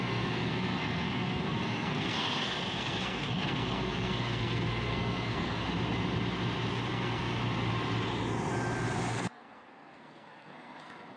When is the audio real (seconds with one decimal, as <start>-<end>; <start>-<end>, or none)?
5.6-6.9; 7.4-9.1